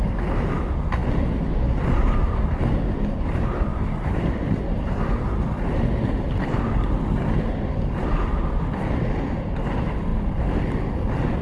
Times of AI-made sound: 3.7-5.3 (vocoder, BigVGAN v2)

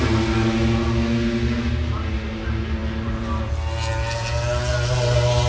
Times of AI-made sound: 2.8-3.5 (vocoder, BigVGAN v2)

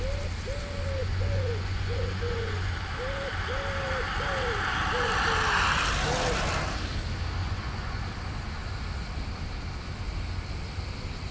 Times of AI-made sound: 1.0-2.7 (vocoder, Vocos); 7.4-8.0

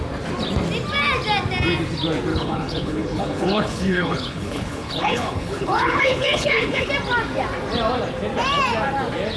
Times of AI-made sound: 2.3-6.9 (codec, HILCodec)

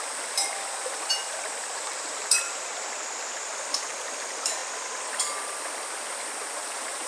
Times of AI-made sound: 0.0-2.7 (vocoder, BigVGAN v2); 3.9-4.6; 6.5-7.1

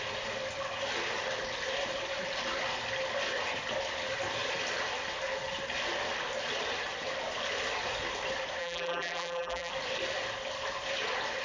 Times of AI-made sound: 8.6-9.7 (vocoder, BigVGAN v2)

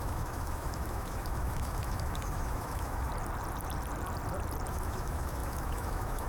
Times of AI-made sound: 0.0-3.1 (autoencoder, DAC-VAE); 4.7-6.3

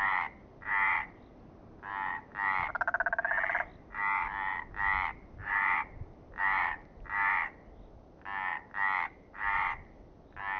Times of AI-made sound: 2.3-6.4 (vocoder, BigVGAN v2)